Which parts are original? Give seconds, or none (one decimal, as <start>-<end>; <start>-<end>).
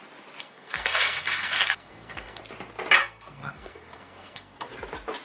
0.0-0.4; 2.4-3.0; 4.7-5.2